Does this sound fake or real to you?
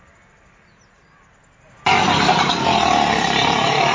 real